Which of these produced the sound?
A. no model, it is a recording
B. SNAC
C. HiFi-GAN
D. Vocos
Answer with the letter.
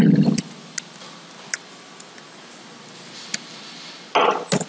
A